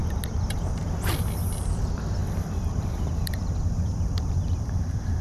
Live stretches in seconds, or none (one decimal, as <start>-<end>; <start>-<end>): 0.0-2.2